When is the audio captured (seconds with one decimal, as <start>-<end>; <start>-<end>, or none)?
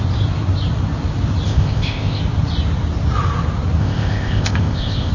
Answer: 0.0-1.5; 2.2-3.8